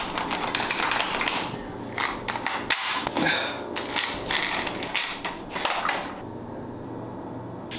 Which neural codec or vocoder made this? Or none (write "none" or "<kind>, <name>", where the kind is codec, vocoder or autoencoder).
none